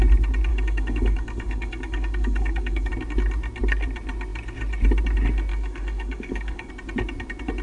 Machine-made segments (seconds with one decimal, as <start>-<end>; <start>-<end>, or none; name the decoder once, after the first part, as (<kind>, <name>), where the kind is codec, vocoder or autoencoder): 0.5-2.9 (codec, DAC); 5.5-6.7